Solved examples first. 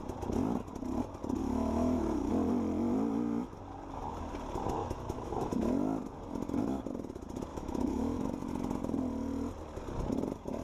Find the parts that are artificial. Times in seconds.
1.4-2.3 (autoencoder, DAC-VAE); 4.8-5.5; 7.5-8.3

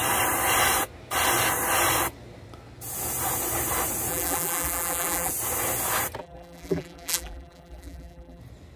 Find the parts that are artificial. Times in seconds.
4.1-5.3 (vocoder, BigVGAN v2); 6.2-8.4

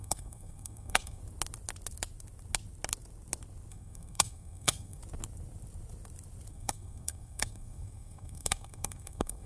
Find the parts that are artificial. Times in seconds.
0.0-1.2 (codec, SNAC); 3.7-5.0; 6.5-9.5